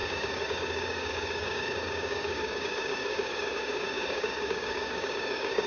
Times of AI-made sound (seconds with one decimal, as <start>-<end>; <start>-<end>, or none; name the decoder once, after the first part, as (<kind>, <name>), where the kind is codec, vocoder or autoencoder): 0.0-5.7 (codec, DAC)